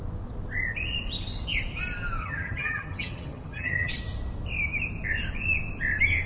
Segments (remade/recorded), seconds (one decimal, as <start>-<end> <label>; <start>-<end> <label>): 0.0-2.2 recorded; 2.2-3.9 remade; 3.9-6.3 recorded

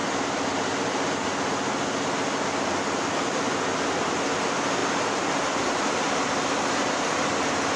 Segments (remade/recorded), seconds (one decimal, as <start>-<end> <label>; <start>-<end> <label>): 0.0-7.8 recorded

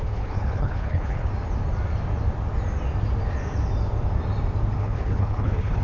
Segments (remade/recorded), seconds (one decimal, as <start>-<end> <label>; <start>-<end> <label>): 0.0-1.3 remade; 1.3-4.8 recorded; 4.8-5.8 remade

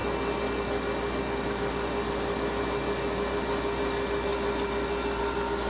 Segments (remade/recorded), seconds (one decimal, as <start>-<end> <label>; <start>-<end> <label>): 0.0-5.7 recorded

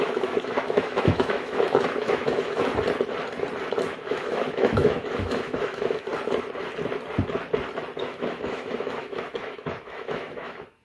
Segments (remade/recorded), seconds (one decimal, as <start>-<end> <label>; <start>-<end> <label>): 0.0-2.7 remade; 2.7-3.7 recorded; 3.7-6.1 remade; 6.1-8.0 recorded; 8.0-10.8 remade

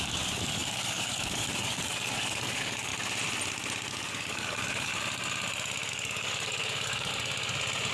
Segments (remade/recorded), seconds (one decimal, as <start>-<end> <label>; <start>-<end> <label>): 0.0-2.9 remade; 2.9-3.9 recorded; 3.9-4.9 remade; 4.9-5.9 recorded; 5.9-7.1 remade; 7.1-7.9 recorded

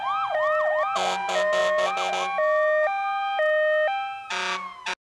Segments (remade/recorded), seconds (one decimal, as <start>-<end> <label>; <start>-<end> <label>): 0.0-5.1 recorded

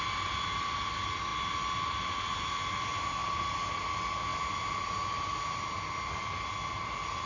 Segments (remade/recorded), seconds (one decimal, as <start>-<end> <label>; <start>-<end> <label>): 0.0-7.3 recorded